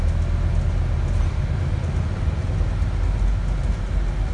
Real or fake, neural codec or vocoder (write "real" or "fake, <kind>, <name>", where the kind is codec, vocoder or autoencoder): real